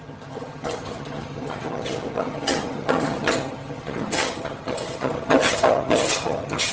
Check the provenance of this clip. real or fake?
fake